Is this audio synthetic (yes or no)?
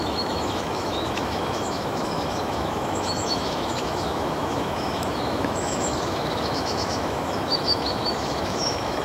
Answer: yes